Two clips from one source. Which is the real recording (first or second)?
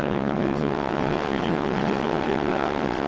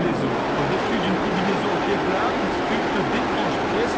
second